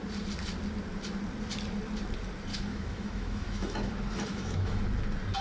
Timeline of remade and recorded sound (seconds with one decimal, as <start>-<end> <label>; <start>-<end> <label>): 0.0-2.5 recorded; 2.5-3.9 remade; 3.9-4.3 recorded; 4.3-4.8 remade; 4.8-5.4 recorded

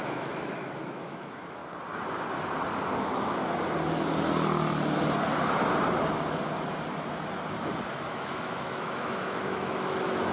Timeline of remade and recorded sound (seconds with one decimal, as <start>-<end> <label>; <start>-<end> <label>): 0.0-1.6 remade; 1.6-3.0 recorded; 3.0-3.4 remade; 3.4-7.9 recorded; 7.9-10.3 remade

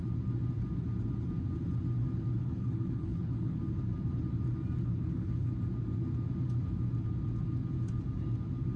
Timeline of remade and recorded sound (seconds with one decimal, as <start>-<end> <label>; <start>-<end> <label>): 0.0-2.4 recorded; 2.4-3.6 remade; 3.6-4.9 recorded; 4.9-5.5 remade; 5.5-8.8 recorded

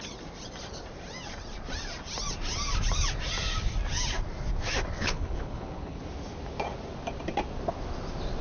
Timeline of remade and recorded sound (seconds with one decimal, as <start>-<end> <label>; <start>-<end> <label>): 0.0-5.0 recorded; 5.0-6.0 remade; 6.0-8.4 recorded

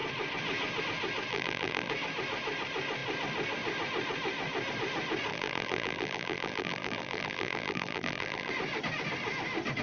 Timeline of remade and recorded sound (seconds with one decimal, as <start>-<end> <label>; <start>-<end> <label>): 0.0-1.3 recorded; 1.3-1.9 remade; 1.9-5.3 recorded; 5.3-8.5 remade; 8.5-9.8 recorded

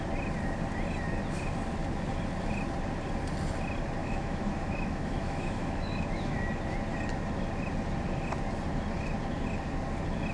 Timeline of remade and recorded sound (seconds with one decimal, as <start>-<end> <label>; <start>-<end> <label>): 0.0-4.0 recorded; 4.0-6.4 remade; 6.4-10.3 recorded

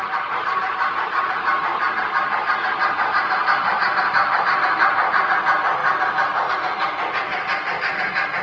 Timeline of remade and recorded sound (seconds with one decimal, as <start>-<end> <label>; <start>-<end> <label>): 0.0-1.7 remade; 1.7-4.4 recorded; 4.4-5.8 remade; 5.8-6.5 recorded; 6.5-7.3 remade; 7.3-8.4 recorded